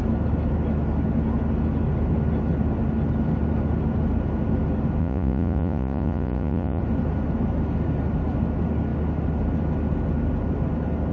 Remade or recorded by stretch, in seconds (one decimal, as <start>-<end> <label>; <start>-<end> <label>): 0.0-5.0 recorded; 5.0-6.8 remade; 6.8-11.1 recorded